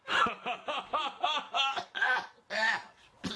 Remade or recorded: recorded